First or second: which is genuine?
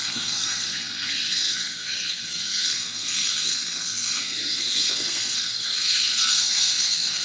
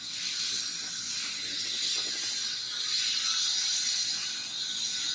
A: second